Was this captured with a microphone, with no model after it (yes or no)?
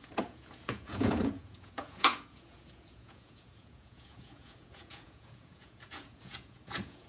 no